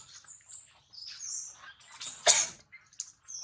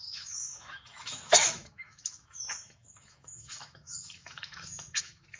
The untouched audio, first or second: first